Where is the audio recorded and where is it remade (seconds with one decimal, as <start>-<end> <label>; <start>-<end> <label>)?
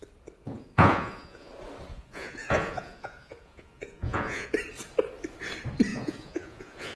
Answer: 0.0-0.4 recorded; 0.4-1.5 remade; 1.5-1.9 recorded; 1.9-4.5 remade; 4.5-5.9 recorded; 5.9-7.0 remade